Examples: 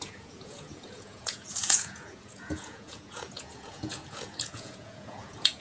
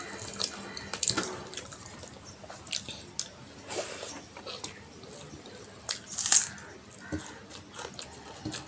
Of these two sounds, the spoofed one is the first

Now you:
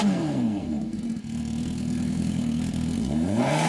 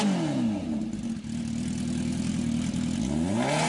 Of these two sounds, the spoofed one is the first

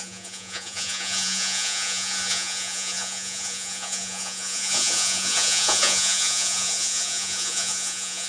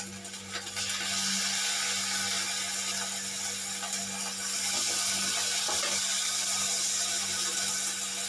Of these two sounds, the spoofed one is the first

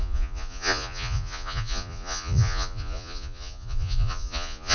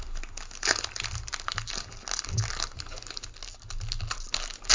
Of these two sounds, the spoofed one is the first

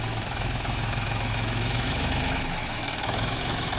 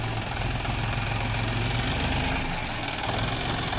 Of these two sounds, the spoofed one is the first